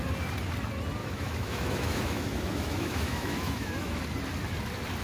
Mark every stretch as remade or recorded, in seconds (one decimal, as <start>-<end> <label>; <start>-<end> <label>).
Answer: 0.0-1.0 recorded; 1.0-4.0 remade; 4.0-5.0 recorded